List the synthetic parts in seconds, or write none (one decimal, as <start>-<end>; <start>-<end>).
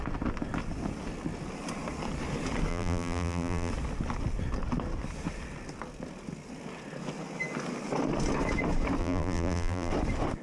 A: 2.7-3.7; 9.0-9.9